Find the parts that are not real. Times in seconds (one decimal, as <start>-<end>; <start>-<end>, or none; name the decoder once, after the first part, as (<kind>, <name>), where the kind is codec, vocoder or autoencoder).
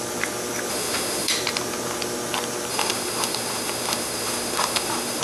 0.7-1.3 (autoencoder, DAC-VAE); 2.7-5.2